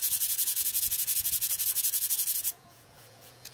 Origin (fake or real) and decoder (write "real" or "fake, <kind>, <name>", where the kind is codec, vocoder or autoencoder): fake, vocoder, Vocos